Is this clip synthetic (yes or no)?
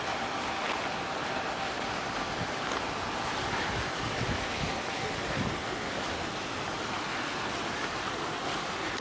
no